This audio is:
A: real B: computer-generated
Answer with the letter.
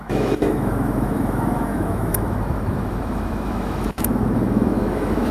B